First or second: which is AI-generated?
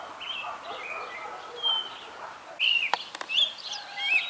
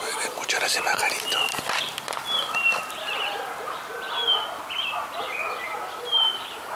second